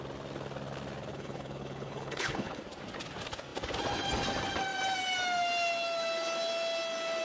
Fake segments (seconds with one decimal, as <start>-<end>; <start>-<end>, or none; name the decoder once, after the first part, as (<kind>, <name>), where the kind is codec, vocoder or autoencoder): 1.1-2.6 (codec, HILCodec)